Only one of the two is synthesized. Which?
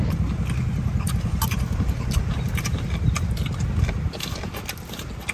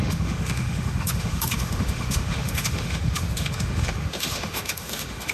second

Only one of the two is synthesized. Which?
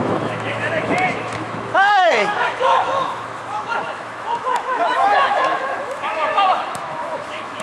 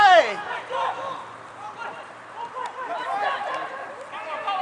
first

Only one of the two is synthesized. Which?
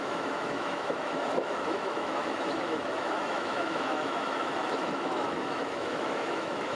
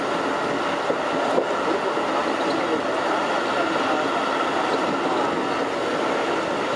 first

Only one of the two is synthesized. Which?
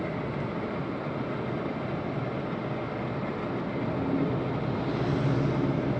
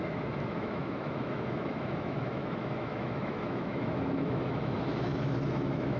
second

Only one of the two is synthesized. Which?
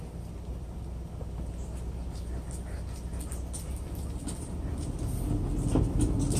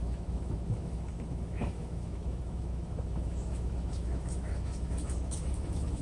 second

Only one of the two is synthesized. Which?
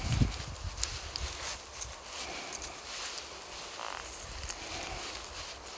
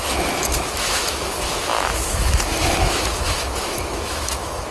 second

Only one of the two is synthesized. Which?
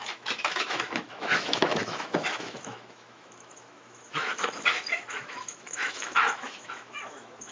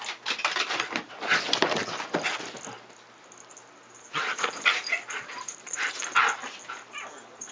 first